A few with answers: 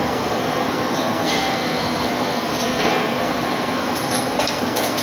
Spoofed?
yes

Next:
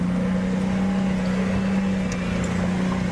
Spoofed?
no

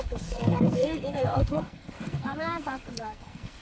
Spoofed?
yes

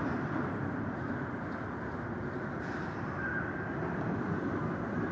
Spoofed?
no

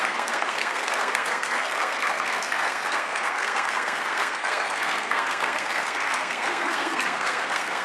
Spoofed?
yes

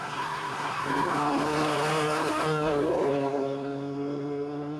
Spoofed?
yes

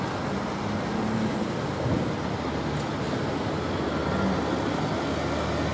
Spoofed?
no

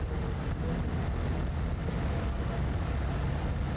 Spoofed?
no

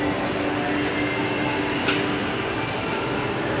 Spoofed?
no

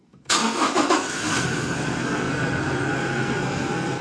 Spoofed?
yes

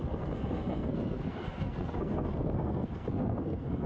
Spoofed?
yes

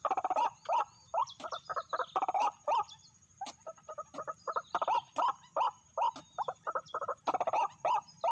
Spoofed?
no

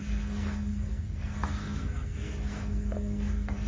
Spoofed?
yes